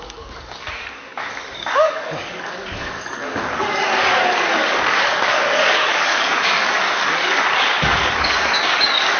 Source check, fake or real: fake